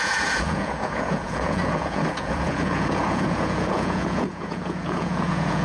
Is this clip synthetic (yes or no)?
yes